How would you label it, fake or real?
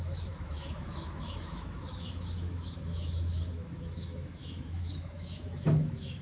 fake